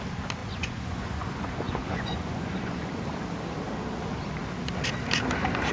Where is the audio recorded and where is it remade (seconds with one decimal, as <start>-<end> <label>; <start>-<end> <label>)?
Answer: 0.0-0.4 recorded; 0.4-2.9 remade; 2.9-5.7 recorded